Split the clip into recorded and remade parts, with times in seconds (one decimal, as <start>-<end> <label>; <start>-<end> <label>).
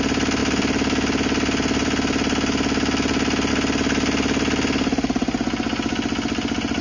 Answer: 0.0-6.8 recorded